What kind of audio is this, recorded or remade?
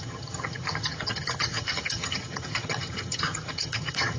remade